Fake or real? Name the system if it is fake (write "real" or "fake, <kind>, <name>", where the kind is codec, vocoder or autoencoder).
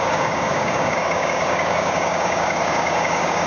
fake, codec, DAC